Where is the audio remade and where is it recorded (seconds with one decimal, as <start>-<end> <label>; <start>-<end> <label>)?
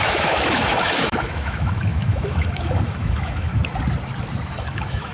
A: 0.0-3.5 remade; 3.5-4.5 recorded; 4.5-5.1 remade